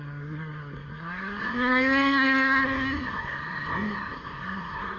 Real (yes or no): no